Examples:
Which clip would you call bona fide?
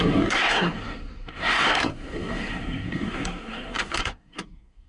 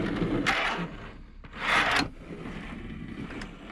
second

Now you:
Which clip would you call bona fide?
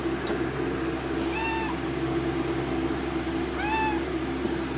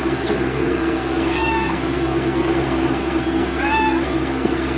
first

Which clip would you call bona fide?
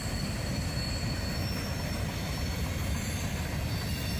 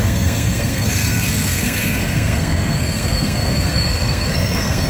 first